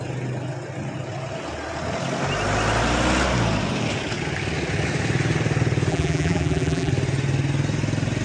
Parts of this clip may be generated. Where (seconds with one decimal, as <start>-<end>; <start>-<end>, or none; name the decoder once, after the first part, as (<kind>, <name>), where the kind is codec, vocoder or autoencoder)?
5.9-6.9 (vocoder, BigVGAN v2)